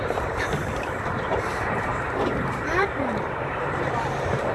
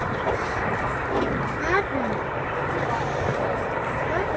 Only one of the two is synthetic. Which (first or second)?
first